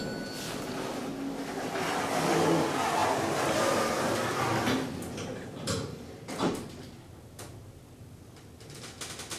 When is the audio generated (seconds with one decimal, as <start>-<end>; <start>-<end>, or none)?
3.0-4.1